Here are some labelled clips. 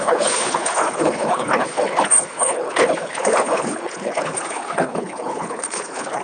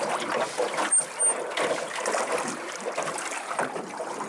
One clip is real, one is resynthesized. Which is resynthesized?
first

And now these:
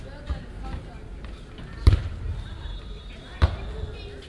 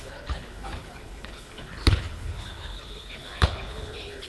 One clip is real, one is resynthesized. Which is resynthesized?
second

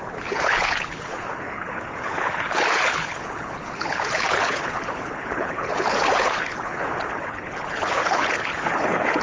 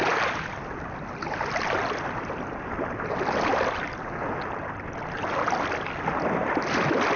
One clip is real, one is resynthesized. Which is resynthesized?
first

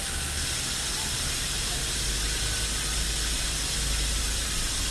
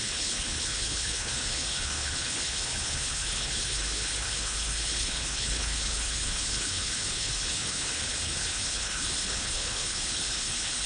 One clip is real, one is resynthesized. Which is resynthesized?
second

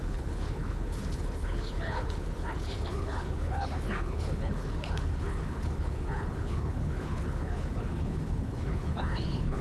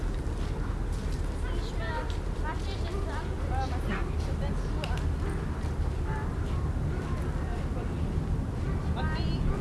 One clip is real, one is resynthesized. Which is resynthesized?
first